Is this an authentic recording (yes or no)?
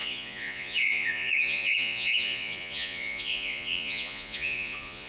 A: no